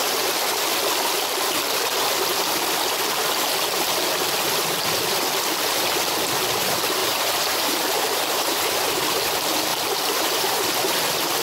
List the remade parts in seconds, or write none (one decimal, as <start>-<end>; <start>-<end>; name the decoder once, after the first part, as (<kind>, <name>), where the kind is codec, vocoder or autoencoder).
7.0-9.0 (vocoder, BigVGAN v2); 9.7-10.7